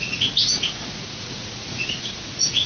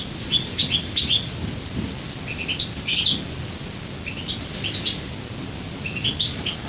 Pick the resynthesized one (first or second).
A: first